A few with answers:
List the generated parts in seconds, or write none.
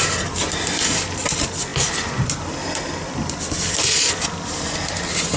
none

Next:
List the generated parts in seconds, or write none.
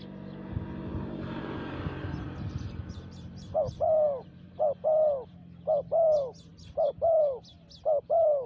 0.9-4.5 (vocoder, BigVGAN v2); 6.5-7.4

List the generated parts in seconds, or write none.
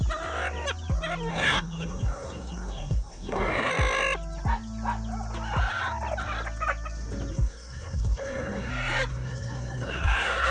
1.3-3.7 (codec, SNAC); 7.3-8.7; 9.1-10.5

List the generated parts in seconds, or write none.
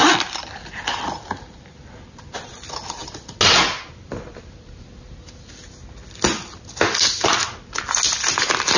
none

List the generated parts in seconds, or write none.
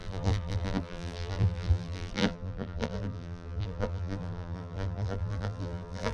0.0-6.1 (vocoder, BigVGAN v2)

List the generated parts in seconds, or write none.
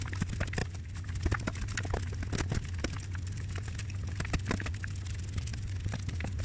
0.6-1.1 (vocoder, BigVGAN v2); 3.8-4.8; 5.5-6.4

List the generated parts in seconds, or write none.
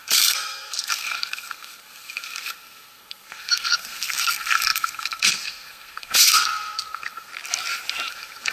0.0-7.3 (codec, SNAC); 8.1-8.5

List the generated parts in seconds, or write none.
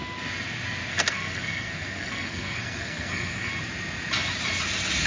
0.9-3.5 (codec, SNAC)